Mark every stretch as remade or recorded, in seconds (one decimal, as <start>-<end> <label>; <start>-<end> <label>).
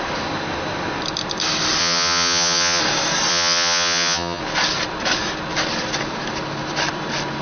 0.0-1.8 recorded; 1.8-2.8 remade; 2.8-3.3 recorded; 3.3-4.4 remade; 4.4-7.4 recorded